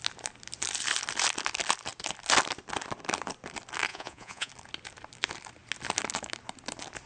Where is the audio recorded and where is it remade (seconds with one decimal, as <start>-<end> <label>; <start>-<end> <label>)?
0.0-3.9 recorded; 3.9-4.5 remade; 4.5-7.1 recorded